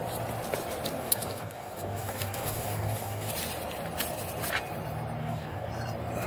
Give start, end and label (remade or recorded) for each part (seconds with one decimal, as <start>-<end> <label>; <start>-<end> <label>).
0.0-1.0 recorded; 1.0-3.3 remade; 3.3-5.2 recorded; 5.2-5.7 remade; 5.7-6.3 recorded